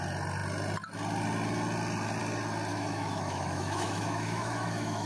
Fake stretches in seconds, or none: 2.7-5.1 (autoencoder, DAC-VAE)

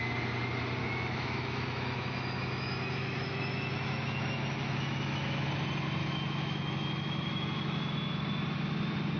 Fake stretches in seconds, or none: 0.8-5.5 (autoencoder, DAC-VAE); 6.0-7.9